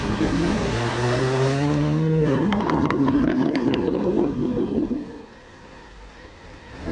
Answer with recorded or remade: remade